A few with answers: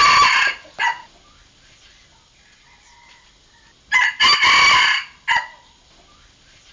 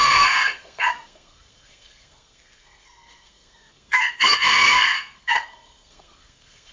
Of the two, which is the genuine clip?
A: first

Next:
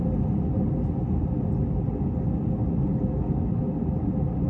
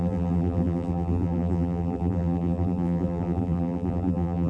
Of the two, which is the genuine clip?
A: first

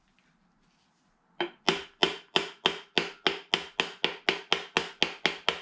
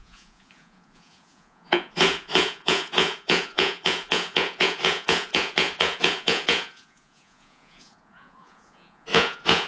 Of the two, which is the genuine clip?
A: first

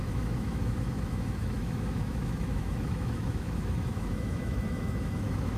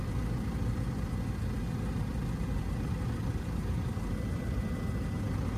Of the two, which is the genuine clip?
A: second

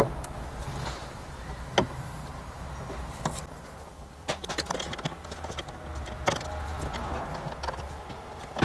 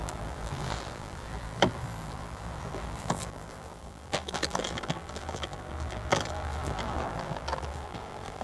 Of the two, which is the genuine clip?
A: first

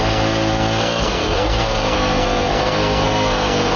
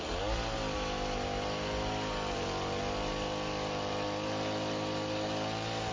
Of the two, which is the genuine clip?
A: second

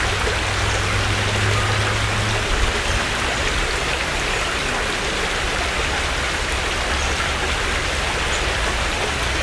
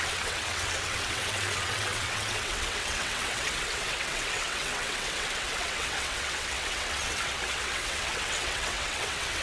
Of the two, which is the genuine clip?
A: first